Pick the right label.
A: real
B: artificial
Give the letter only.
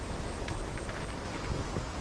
A